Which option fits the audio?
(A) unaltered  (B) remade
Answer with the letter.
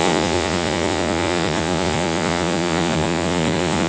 B